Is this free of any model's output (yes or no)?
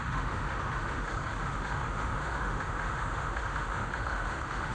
no